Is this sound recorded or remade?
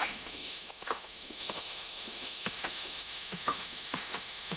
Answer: remade